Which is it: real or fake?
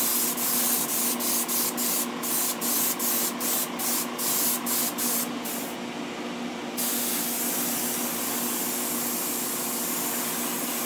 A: real